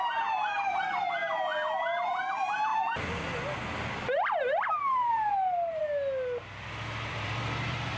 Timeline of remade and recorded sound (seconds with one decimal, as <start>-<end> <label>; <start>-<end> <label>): 0.0-1.2 remade; 1.2-2.1 recorded; 2.1-2.7 remade; 2.7-4.7 recorded; 4.7-5.8 remade; 5.8-7.1 recorded; 7.1-8.0 remade

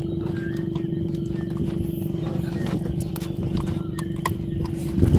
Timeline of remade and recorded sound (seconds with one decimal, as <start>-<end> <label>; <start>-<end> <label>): 0.0-5.2 recorded

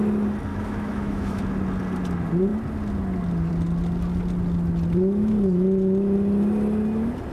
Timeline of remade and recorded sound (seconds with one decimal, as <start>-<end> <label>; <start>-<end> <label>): 0.0-0.5 recorded; 0.5-1.4 remade; 1.4-7.3 recorded